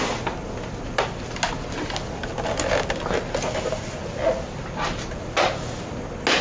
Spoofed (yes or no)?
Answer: no